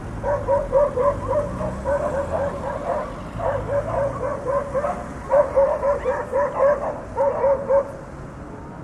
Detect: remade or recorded recorded